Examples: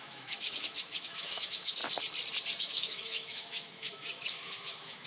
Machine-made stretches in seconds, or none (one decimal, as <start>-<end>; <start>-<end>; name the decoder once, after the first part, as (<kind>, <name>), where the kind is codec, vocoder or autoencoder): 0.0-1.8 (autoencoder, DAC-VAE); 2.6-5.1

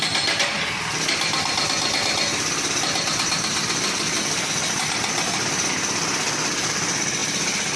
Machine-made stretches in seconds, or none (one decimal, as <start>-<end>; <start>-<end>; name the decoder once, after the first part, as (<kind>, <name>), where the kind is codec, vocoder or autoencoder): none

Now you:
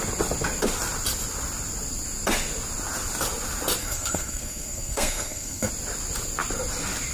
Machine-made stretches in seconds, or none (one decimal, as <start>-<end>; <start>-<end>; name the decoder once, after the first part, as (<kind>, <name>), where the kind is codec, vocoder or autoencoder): 3.8-5.7 (codec, SNAC)

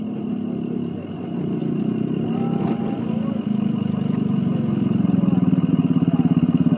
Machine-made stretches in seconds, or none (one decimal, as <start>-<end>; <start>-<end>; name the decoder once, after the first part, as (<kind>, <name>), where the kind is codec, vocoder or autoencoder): none

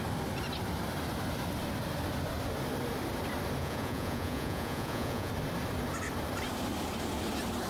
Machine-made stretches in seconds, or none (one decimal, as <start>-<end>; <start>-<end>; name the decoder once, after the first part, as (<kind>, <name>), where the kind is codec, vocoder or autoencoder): 3.6-5.3 (vocoder, Vocos)